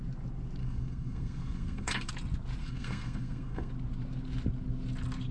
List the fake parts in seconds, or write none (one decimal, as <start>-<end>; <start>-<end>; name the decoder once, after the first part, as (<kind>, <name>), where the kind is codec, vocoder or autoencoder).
0.6-2.1 (codec, SNAC); 2.6-3.7